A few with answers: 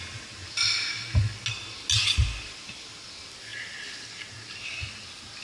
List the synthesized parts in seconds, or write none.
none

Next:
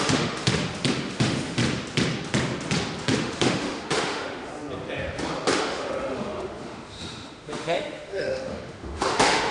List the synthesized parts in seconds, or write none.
0.0-0.5; 1.0-1.6; 3.2-4.5; 5.6-9.5